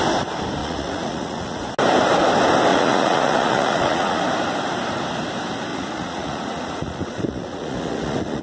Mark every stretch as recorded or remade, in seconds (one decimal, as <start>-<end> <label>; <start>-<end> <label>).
0.0-0.6 recorded; 0.6-1.6 remade; 1.6-2.7 recorded; 2.7-4.2 remade; 4.2-5.7 recorded; 5.7-8.4 remade